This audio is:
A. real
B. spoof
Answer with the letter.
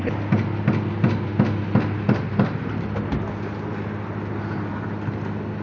A